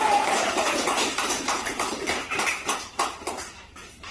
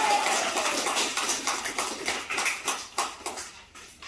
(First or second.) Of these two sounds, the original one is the second